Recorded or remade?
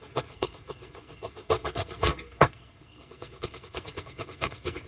remade